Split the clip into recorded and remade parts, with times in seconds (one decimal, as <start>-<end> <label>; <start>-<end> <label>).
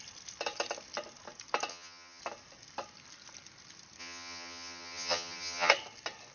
0.0-1.7 recorded; 1.7-2.2 remade; 2.2-4.0 recorded; 4.0-5.7 remade; 5.7-6.3 recorded